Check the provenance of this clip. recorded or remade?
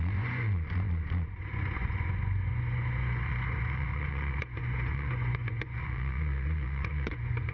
remade